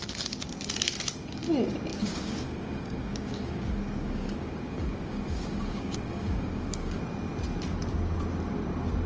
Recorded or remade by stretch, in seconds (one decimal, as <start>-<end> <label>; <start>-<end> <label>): 0.0-1.9 recorded; 1.9-7.0 remade; 7.0-9.1 recorded